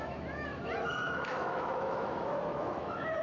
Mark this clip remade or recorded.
remade